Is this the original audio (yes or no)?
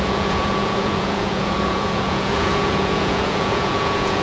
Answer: no